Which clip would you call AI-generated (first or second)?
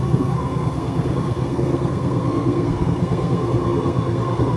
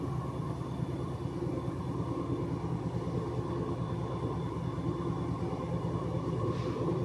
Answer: first